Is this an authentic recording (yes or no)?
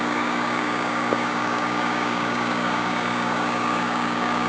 no